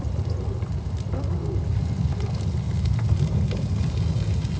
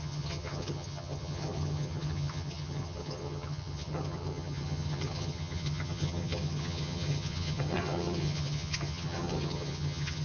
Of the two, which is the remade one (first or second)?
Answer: second